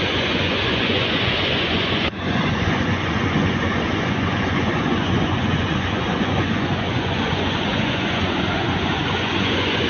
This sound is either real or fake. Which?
fake